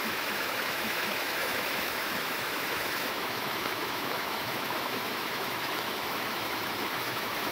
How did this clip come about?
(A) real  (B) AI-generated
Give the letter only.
B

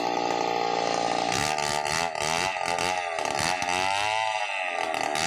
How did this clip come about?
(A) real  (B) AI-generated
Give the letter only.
A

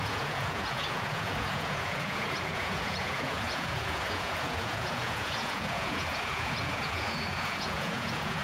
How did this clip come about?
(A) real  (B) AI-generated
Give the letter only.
B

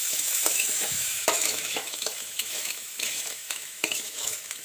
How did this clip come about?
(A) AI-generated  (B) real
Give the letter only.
A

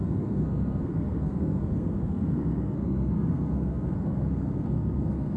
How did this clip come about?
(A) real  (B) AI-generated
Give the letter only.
B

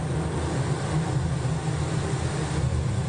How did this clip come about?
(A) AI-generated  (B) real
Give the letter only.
B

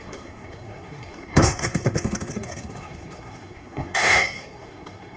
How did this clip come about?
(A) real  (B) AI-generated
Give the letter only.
B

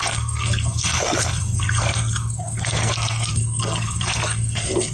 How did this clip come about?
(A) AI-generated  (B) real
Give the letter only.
A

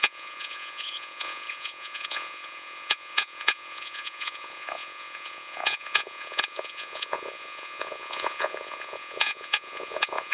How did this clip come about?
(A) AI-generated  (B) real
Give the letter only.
A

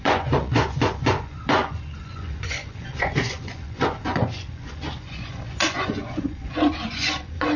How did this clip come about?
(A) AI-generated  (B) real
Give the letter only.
A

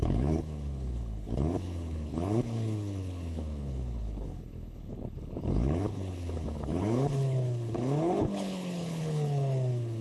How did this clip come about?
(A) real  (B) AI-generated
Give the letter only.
B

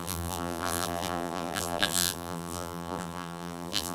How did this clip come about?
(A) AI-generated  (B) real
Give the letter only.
A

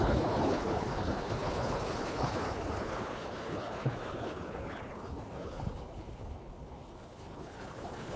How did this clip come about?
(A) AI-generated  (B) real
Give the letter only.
A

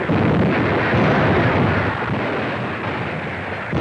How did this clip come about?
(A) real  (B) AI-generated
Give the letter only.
A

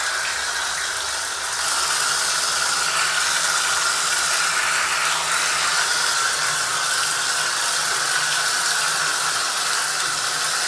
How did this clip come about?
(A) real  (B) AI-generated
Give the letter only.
A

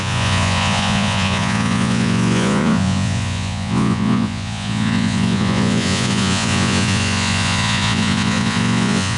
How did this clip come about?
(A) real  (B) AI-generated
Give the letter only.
B